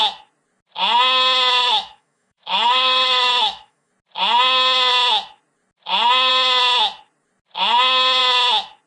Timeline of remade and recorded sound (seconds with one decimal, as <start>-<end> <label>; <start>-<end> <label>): 0.0-1.6 recorded; 1.6-3.9 remade; 3.9-8.9 recorded